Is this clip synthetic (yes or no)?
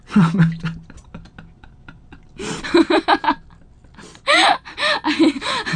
no